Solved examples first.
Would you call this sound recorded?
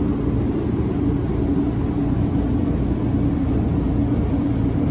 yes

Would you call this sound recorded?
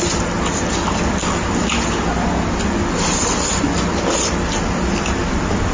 yes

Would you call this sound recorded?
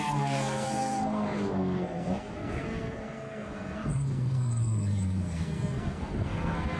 no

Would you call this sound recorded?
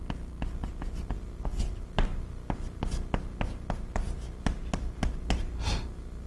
yes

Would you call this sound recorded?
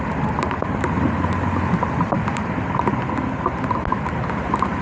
yes